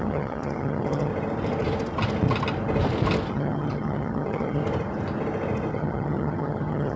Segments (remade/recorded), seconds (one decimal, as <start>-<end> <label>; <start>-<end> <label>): 0.0-1.1 remade; 1.1-3.3 recorded; 3.3-4.6 remade; 4.6-5.7 recorded; 5.7-7.0 remade

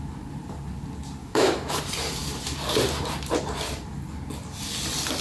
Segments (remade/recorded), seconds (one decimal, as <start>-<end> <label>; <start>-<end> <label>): 0.0-1.2 recorded; 1.2-1.8 remade; 1.8-5.2 recorded

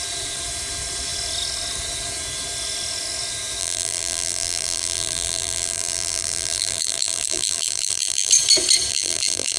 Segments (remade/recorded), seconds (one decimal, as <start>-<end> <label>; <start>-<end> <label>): 0.0-3.6 recorded; 3.6-8.3 remade; 8.3-8.9 recorded; 8.9-9.6 remade

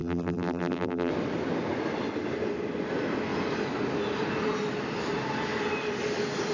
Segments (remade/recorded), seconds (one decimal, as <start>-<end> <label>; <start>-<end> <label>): 0.0-1.1 remade; 1.1-6.5 recorded

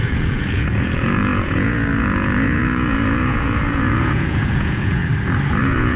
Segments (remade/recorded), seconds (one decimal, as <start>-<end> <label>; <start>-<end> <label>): 0.0-5.0 remade; 5.0-5.6 recorded; 5.6-6.0 remade